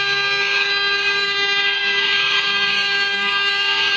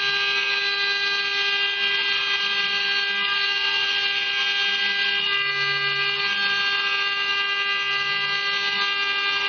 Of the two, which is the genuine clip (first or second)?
second